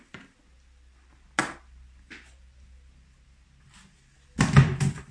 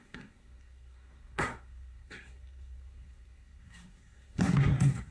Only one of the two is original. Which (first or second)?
first